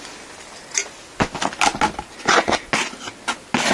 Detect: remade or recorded recorded